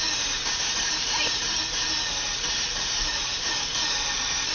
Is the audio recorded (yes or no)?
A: no